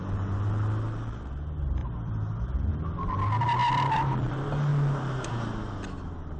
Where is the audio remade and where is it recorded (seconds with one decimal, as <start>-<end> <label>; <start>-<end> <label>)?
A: 0.0-1.8 recorded; 1.8-2.7 remade; 2.7-3.6 recorded; 3.6-4.3 remade; 4.3-6.4 recorded